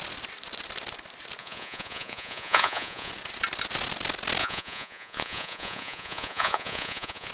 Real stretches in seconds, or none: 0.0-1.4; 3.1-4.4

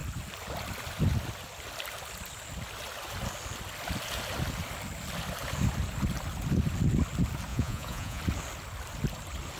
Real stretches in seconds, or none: 0.0-7.5; 8.2-9.6